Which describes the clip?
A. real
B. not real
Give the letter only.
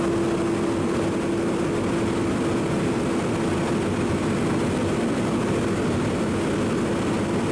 A